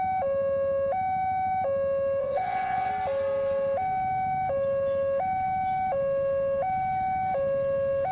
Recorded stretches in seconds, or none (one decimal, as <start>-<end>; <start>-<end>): 0.0-2.2; 2.9-8.1